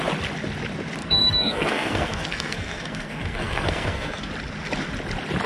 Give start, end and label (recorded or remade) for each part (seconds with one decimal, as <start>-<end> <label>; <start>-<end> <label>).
0.0-1.0 recorded; 1.0-4.3 remade; 4.3-5.5 recorded